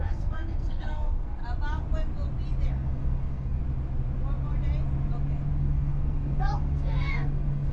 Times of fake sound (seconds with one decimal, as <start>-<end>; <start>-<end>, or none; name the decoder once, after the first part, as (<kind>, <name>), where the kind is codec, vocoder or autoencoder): 0.0-1.4 (codec, SNAC); 2.7-3.6; 5.6-7.7